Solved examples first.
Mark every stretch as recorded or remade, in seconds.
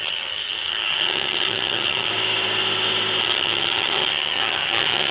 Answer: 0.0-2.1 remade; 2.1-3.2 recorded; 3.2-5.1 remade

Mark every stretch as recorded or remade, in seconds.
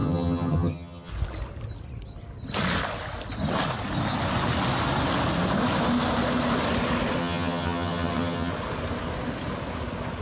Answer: 0.0-1.1 remade; 1.1-7.2 recorded; 7.2-8.5 remade; 8.5-10.2 recorded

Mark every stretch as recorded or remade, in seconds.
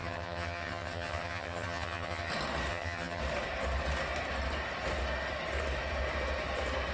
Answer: 0.0-2.3 remade; 2.3-2.7 recorded; 2.7-3.2 remade; 3.2-6.9 recorded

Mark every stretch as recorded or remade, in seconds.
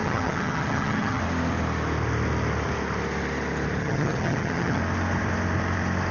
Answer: 0.0-1.2 remade; 1.2-3.8 recorded; 3.8-4.8 remade; 4.8-6.1 recorded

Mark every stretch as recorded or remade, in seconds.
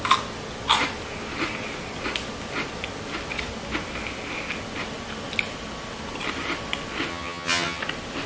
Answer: 0.0-7.1 recorded; 7.1-7.8 remade; 7.8-8.3 recorded